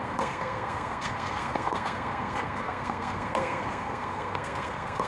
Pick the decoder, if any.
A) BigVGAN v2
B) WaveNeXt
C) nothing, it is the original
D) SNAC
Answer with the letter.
D